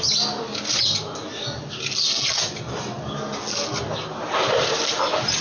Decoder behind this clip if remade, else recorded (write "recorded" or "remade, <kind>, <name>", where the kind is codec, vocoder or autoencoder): recorded